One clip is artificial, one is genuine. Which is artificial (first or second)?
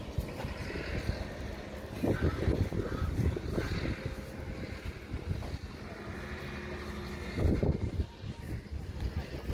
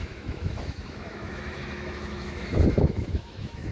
second